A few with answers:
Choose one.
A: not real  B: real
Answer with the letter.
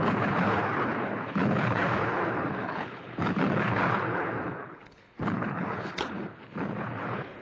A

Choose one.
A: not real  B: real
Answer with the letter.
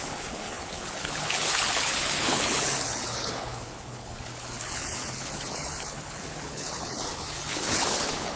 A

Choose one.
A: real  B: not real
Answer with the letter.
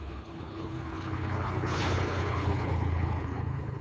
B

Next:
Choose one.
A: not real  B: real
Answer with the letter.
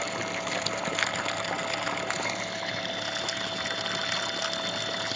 B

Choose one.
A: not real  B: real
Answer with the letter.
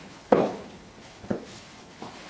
A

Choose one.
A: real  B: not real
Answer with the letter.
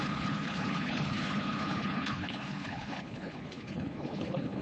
B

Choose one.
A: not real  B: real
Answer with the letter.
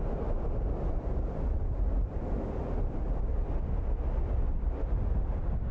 B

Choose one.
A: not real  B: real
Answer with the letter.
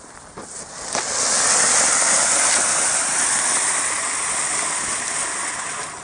B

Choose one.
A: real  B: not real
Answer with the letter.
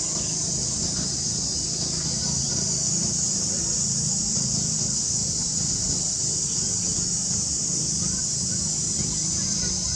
A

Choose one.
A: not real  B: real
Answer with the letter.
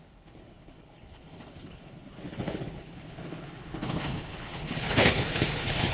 A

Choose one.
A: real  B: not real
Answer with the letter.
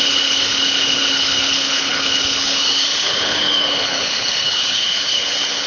B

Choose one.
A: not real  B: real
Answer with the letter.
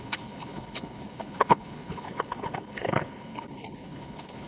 A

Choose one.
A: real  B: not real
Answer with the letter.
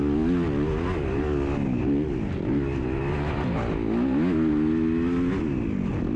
A